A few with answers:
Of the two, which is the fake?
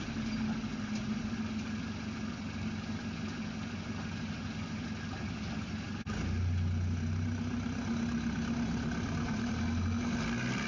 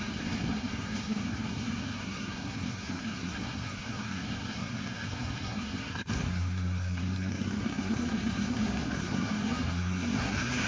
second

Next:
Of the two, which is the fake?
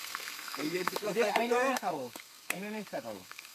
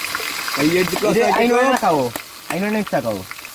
first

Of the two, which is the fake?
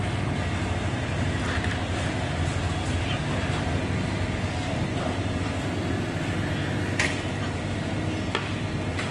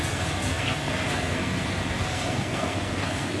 second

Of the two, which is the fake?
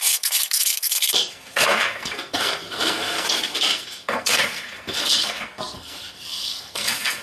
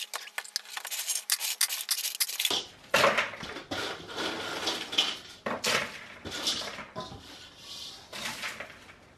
first